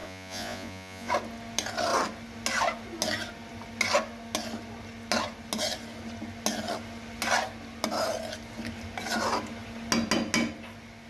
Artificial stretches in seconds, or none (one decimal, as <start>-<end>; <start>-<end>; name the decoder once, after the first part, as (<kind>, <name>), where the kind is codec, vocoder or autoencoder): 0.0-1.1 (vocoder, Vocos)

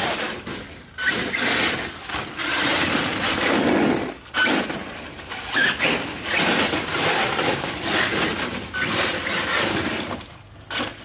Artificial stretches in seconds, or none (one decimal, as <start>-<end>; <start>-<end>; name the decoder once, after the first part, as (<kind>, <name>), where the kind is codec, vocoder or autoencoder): none

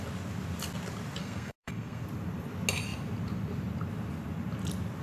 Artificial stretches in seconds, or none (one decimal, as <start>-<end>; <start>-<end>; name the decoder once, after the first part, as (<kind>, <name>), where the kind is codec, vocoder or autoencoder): 1.2-2.0 (codec, SNAC)

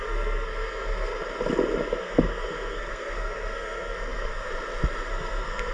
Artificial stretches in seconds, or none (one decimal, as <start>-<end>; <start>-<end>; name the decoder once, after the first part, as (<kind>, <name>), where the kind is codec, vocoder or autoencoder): 0.0-1.1 (codec, SNAC); 2.0-4.5; 5.1-5.7

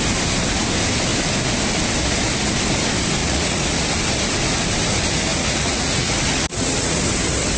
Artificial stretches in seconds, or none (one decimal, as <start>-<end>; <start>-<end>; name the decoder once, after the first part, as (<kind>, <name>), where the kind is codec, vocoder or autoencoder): 3.2-3.8 (vocoder, Vocos); 5.3-7.0

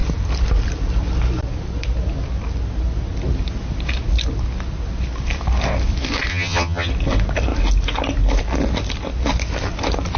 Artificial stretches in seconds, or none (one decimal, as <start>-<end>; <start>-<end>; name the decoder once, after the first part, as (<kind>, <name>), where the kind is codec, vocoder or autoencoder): 6.3-6.9 (vocoder, HiFi-GAN)

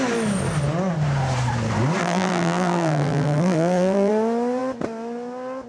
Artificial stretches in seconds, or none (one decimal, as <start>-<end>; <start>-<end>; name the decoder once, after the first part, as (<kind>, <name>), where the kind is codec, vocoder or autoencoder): 2.0-4.1 (vocoder, BigVGAN v2)

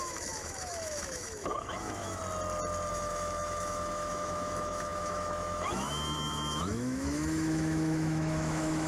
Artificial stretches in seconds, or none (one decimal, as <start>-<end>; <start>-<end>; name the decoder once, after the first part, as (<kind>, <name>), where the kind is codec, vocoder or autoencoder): 0.0-2.2 (autoencoder, DAC-VAE); 2.9-8.9